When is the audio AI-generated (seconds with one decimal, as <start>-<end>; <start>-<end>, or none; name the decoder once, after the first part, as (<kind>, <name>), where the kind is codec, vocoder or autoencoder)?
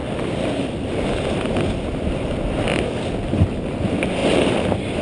none